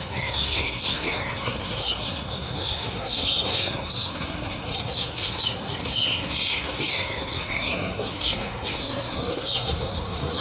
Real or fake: fake